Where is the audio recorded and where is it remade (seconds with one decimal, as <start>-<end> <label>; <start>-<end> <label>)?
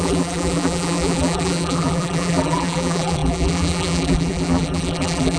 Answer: 0.0-5.4 remade